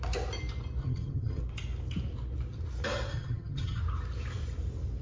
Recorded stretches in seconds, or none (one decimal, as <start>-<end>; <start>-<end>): 0.0-0.8; 1.4-3.1; 3.8-5.0